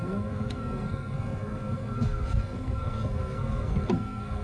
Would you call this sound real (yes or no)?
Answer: no